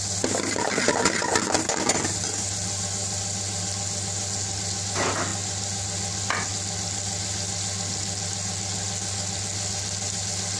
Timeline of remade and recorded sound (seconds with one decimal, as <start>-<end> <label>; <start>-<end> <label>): 0.0-10.6 recorded